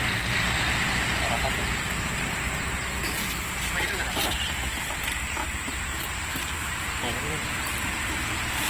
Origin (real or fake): fake